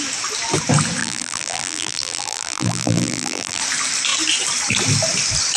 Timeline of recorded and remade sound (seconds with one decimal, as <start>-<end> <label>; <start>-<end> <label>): 0.0-1.0 recorded; 1.0-3.6 remade; 3.6-5.6 recorded